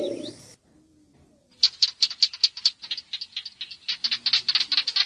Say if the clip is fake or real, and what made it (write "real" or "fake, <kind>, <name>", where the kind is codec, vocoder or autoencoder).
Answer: real